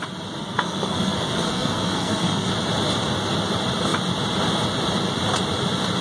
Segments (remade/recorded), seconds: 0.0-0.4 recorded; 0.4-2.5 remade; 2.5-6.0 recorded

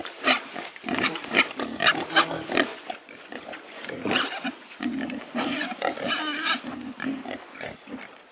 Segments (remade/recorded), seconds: 0.0-0.5 recorded; 0.5-1.4 remade; 1.4-2.7 recorded; 2.7-6.1 remade; 6.1-6.7 recorded; 6.7-7.9 remade; 7.9-8.3 recorded

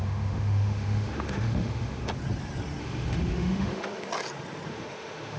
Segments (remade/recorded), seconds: 0.0-2.1 remade; 2.1-2.8 recorded; 2.8-4.1 remade; 4.1-4.7 recorded; 4.7-5.4 remade

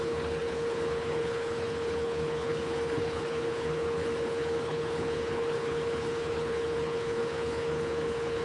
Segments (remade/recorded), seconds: 0.0-8.4 remade

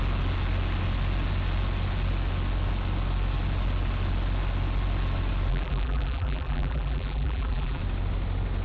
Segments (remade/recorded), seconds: 0.0-5.5 recorded; 5.5-7.8 remade; 7.8-8.6 recorded

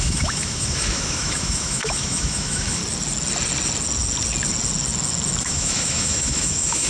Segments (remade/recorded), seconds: 0.0-2.8 remade; 2.8-5.4 recorded; 5.4-6.9 remade

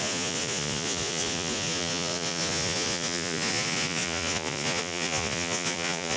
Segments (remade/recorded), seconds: 0.0-6.2 remade

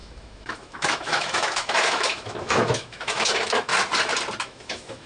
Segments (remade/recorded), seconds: 0.0-3.7 remade; 3.7-4.4 recorded; 4.4-5.1 remade